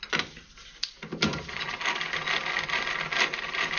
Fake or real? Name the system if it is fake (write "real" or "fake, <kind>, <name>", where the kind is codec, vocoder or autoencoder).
real